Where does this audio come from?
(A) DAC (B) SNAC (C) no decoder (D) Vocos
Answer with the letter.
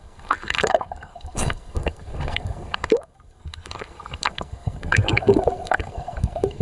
B